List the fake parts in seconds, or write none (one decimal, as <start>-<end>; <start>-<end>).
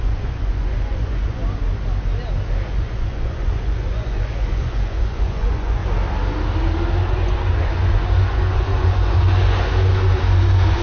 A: 0.0-1.4; 2.7-5.8; 7.1-10.8